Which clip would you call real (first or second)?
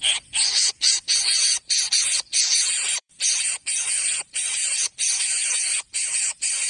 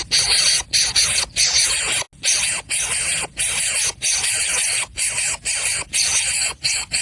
second